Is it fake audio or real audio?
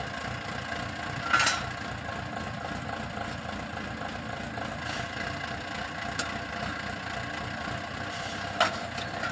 real